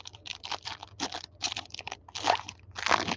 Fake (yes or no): no